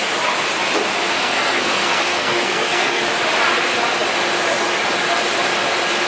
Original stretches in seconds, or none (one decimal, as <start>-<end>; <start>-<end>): 0.0-1.2; 3.1-6.1